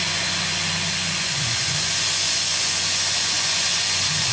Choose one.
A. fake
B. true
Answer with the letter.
A